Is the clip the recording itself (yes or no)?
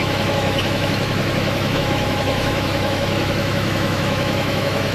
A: no